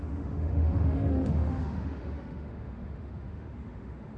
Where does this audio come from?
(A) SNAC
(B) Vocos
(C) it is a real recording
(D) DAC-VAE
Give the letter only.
D